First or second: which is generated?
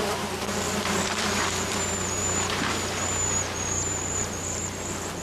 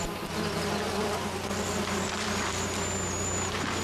first